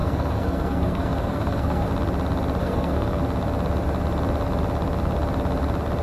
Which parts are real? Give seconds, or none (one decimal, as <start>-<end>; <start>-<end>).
1.9-2.6; 3.2-6.0